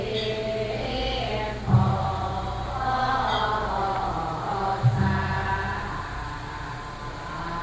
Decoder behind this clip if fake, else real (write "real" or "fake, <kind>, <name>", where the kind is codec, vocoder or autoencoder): real